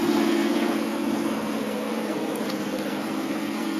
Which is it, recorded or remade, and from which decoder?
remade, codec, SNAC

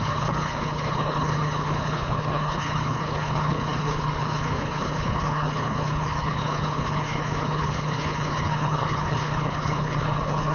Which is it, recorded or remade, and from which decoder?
remade, codec, HILCodec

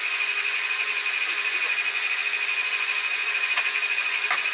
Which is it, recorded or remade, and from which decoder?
remade, vocoder, Vocos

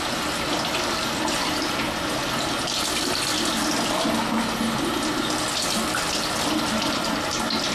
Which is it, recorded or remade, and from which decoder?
recorded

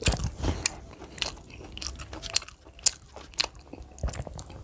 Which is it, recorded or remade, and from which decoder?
recorded